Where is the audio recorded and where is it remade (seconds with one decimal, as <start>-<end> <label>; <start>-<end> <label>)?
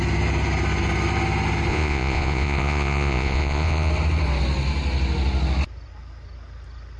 0.0-1.7 recorded; 1.7-3.9 remade; 3.9-7.0 recorded